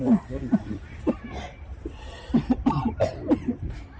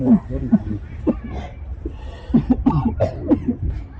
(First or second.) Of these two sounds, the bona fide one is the second